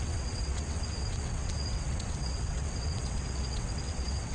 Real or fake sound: fake